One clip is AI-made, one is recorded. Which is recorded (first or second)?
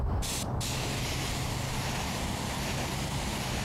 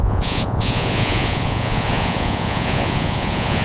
first